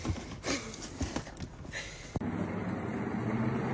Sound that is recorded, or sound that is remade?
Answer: recorded